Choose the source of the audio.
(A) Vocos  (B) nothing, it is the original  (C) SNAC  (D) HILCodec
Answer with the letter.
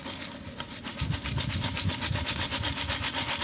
B